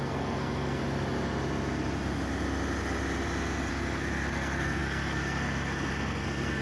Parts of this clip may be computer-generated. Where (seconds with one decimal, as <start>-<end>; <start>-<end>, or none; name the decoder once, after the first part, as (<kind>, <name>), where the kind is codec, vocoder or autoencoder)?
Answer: 0.0-0.8 (codec, SNAC); 3.7-6.6